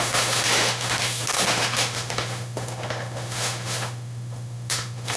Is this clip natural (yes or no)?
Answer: no